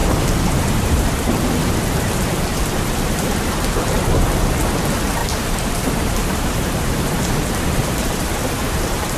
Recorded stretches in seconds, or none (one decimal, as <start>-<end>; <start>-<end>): 1.1-5.2; 8.1-9.2